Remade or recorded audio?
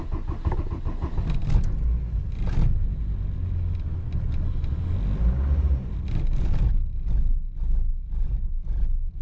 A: recorded